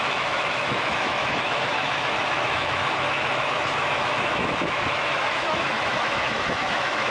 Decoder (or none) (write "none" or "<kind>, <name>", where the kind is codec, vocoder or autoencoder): autoencoder, DAC-VAE